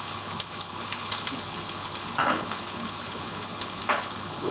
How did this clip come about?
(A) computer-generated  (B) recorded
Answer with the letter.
A